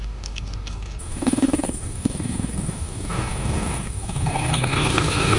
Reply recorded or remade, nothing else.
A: remade